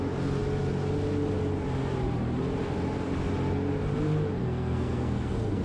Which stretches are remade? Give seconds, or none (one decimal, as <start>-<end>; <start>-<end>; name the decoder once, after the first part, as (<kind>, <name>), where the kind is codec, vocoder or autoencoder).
4.4-5.6 (codec, SNAC)